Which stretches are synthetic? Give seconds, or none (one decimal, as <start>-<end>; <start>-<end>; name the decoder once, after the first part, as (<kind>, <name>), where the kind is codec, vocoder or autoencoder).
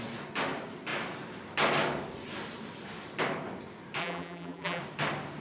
4.0-4.8 (vocoder, BigVGAN v2)